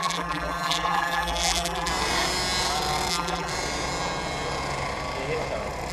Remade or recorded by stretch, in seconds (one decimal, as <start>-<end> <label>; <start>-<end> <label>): 0.0-1.9 remade; 1.9-3.1 recorded; 3.1-3.5 remade; 3.5-5.9 recorded